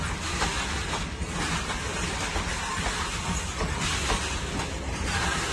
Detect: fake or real real